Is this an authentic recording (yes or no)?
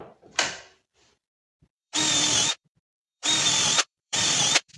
no